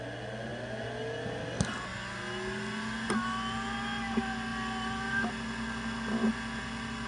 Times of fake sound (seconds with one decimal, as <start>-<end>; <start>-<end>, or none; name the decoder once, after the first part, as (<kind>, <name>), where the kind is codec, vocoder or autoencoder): none

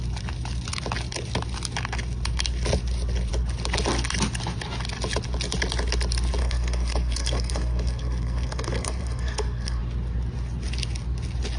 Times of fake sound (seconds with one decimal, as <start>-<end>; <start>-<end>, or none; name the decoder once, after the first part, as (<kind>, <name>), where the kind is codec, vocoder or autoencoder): 6.4-9.8 (codec, SNAC)

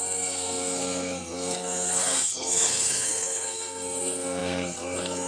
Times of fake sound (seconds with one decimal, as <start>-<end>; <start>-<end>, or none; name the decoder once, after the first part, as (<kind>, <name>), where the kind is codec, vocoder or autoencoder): 0.0-5.3 (codec, SNAC)

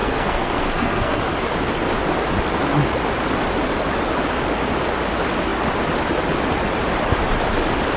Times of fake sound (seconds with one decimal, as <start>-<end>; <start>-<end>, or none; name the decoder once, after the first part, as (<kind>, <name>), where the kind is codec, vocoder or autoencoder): 0.0-1.2 (codec, SNAC)

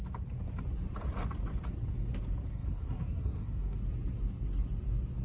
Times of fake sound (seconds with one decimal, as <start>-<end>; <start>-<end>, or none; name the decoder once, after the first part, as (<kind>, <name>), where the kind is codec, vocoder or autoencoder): 2.5-3.8 (codec, SNAC)

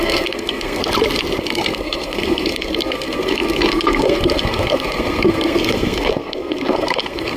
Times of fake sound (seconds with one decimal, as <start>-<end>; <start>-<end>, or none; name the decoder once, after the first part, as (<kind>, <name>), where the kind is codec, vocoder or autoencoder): 0.0-0.8 (codec, SNAC); 1.4-7.4

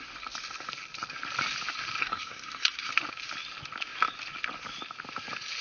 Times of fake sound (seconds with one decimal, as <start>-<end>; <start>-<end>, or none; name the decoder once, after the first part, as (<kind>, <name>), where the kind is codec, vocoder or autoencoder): 2.0-2.9 (codec, SNAC)